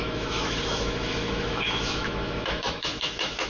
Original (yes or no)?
no